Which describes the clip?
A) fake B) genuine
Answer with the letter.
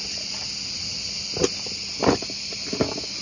B